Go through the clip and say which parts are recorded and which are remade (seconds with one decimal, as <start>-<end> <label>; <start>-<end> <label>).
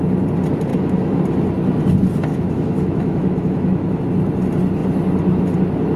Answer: 0.0-0.7 recorded; 0.7-1.2 remade; 1.2-2.3 recorded; 2.3-4.0 remade; 4.0-6.0 recorded